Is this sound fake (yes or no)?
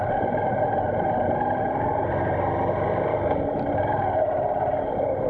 no